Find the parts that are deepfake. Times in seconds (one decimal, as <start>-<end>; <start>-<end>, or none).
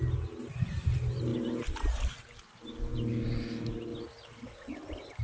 none